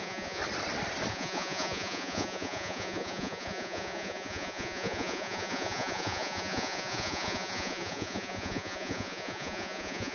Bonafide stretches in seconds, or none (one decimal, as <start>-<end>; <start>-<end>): 0.4-1.1